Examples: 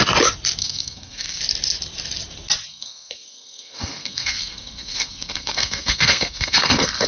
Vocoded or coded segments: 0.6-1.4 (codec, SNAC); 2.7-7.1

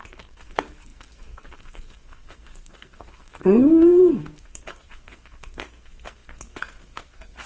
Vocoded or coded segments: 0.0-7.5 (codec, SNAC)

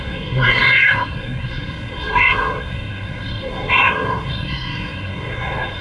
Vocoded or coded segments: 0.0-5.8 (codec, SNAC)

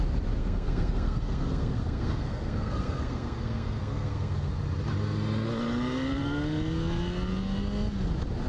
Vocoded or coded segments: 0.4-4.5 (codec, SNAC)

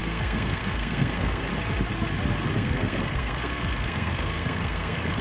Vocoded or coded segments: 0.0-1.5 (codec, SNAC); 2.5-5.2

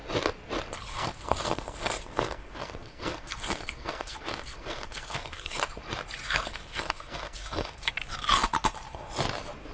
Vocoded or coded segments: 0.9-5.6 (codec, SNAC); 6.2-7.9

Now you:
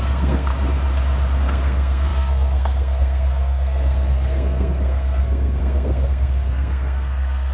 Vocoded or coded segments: 0.0-0.5 (codec, SNAC); 1.4-7.5

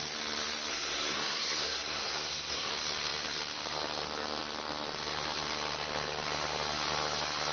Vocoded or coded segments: 0.7-2.7 (codec, SNAC)